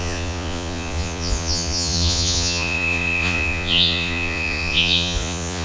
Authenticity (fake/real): fake